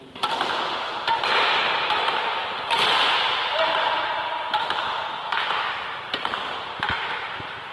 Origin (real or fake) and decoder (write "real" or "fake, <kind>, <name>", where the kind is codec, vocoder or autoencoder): real